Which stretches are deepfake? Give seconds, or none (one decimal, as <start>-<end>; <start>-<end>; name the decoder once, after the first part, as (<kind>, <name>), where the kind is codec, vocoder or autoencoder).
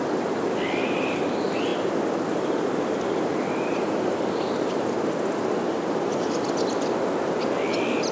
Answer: none